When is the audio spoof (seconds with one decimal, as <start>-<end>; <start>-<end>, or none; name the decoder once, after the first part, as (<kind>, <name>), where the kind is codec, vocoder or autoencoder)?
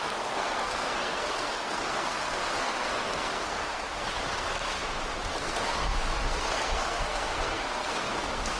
0.0-4.8 (codec, SNAC); 5.3-8.6